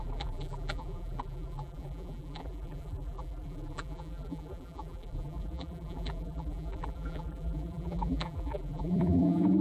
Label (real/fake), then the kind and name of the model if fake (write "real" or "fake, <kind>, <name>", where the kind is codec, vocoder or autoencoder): fake, vocoder, BigVGAN v2